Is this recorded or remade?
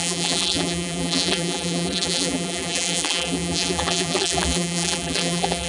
remade